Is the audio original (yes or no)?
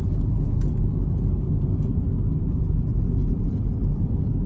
yes